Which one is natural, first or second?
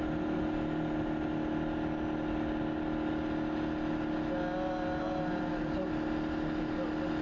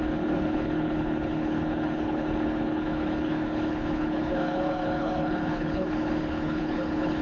first